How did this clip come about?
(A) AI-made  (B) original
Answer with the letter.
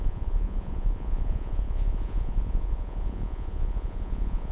A